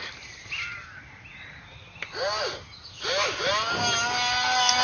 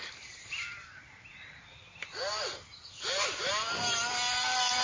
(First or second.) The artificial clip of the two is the second